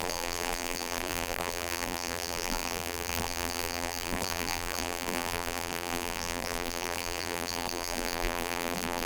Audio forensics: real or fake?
fake